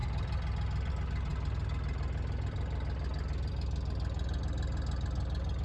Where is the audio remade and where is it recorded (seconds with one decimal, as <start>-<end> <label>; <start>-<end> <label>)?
0.0-5.6 recorded